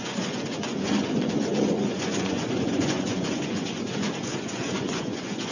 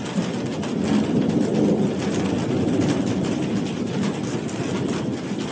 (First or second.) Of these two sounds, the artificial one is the first